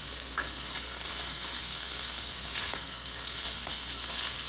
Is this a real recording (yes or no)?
no